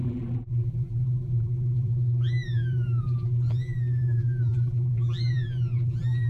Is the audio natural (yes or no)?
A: no